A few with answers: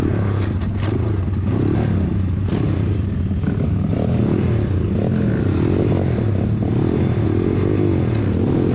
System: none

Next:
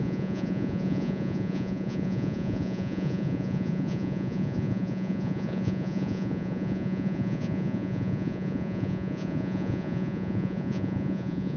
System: vocoder, Vocos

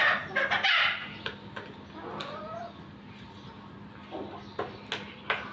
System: none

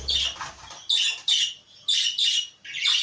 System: none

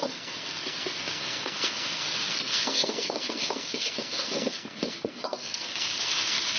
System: codec, SNAC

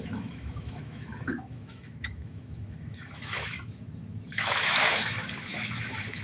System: autoencoder, DAC-VAE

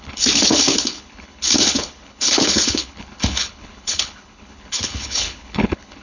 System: codec, HILCodec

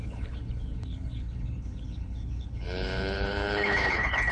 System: codec, HILCodec